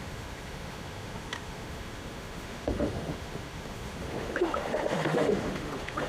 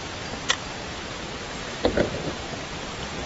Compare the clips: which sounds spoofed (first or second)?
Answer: first